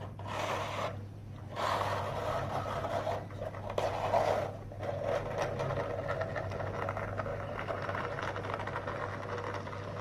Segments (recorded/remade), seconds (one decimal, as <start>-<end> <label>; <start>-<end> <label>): 0.0-7.3 recorded; 7.3-8.2 remade; 8.2-10.0 recorded